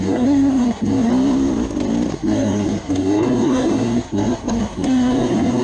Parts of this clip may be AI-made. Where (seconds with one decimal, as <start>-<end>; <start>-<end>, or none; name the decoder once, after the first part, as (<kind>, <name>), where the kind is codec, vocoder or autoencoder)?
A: 0.0-1.1 (codec, SNAC); 2.1-5.6